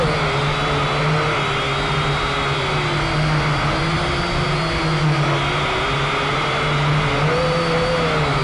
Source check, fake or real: real